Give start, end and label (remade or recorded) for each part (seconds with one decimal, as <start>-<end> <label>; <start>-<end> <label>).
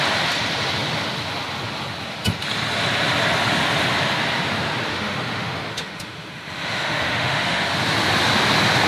0.0-4.9 recorded; 4.9-7.6 remade; 7.6-8.9 recorded